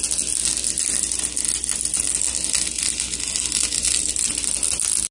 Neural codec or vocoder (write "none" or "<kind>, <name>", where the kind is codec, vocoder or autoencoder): none